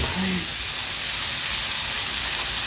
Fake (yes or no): no